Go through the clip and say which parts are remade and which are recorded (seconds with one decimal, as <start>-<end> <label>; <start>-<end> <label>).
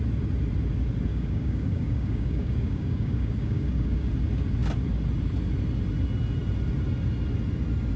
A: 0.0-1.1 recorded; 1.1-4.1 remade; 4.1-8.0 recorded